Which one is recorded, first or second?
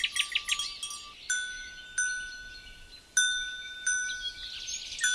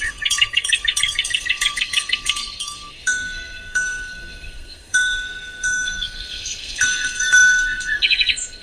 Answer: first